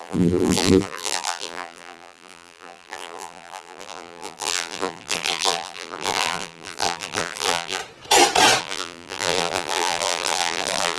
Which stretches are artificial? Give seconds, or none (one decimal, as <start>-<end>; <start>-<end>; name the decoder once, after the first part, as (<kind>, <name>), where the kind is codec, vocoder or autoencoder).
0.0-7.8 (vocoder, BigVGAN v2); 8.6-11.0